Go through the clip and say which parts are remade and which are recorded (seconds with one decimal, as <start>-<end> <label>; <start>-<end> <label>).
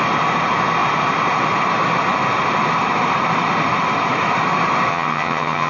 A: 0.0-4.9 recorded; 4.9-5.7 remade